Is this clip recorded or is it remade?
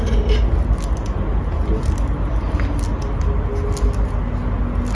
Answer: recorded